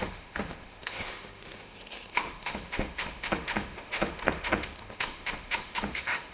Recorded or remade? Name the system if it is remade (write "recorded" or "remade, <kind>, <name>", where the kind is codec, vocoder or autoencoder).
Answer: remade, autoencoder, DAC-VAE